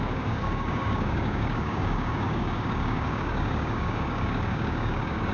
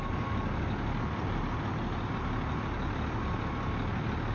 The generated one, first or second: first